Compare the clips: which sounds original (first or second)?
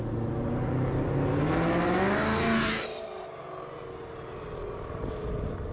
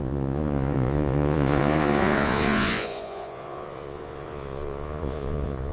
first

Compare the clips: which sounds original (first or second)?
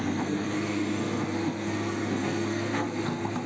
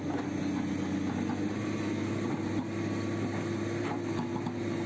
second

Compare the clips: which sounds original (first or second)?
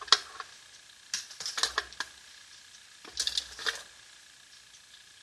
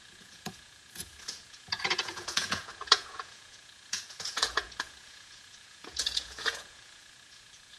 first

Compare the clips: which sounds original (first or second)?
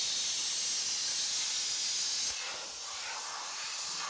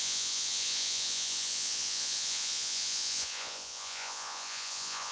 first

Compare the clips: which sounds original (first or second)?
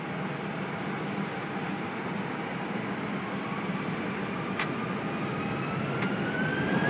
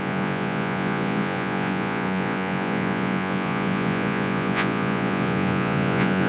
first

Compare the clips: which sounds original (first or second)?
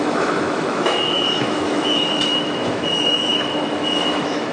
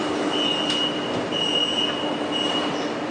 second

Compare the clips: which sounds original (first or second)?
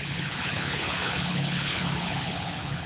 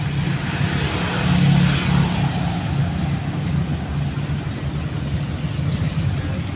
second